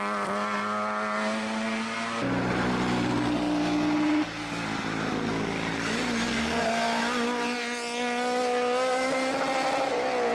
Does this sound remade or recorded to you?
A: recorded